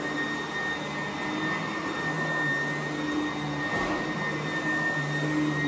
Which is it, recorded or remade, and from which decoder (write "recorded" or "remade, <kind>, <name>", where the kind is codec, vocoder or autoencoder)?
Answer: recorded